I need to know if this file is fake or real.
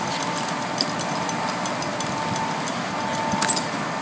real